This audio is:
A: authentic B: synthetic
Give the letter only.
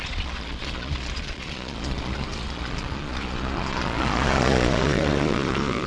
B